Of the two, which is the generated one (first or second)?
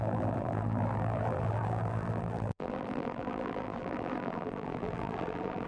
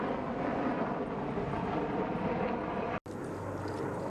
first